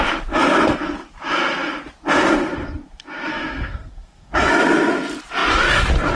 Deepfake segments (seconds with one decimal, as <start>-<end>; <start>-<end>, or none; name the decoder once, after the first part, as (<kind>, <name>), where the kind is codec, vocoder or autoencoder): 3.3-4.3 (codec, SNAC)